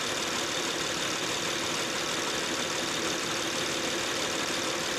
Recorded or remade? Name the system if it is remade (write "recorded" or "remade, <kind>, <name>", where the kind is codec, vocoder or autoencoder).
recorded